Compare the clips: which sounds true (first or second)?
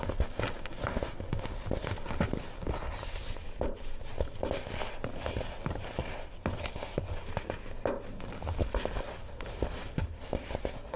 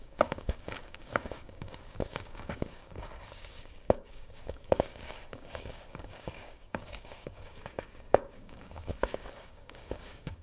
first